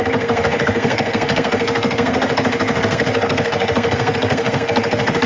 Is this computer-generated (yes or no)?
yes